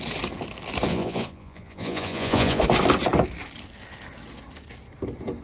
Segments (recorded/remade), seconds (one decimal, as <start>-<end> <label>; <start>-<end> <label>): 0.0-0.9 recorded; 0.9-2.6 remade; 2.6-5.4 recorded

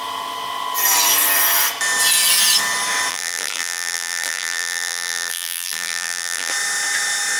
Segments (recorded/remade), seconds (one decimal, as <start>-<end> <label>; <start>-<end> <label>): 0.0-3.1 recorded; 3.1-6.5 remade; 6.5-7.4 recorded

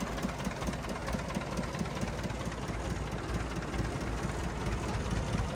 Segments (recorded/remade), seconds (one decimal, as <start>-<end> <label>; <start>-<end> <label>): 0.0-5.6 recorded